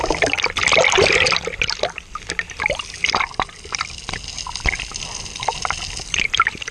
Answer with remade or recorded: recorded